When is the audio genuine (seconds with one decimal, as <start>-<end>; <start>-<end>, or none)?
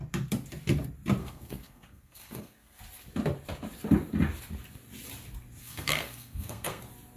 0.0-1.2; 2.8-5.6; 6.8-7.2